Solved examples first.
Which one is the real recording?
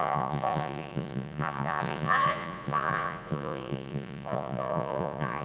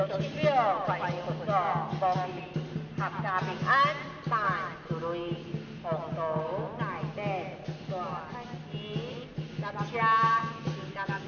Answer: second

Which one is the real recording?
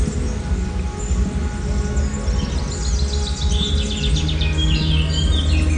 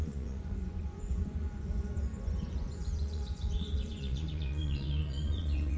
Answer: first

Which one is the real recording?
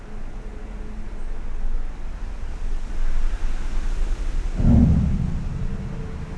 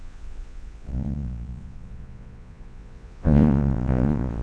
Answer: first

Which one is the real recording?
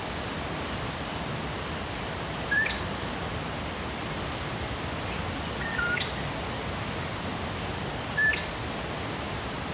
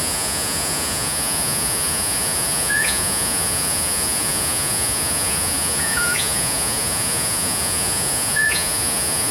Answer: first